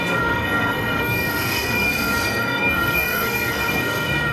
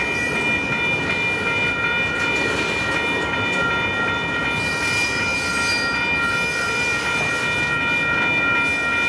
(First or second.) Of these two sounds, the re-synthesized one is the first